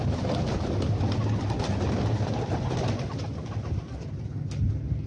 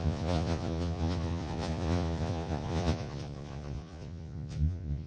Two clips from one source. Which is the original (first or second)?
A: first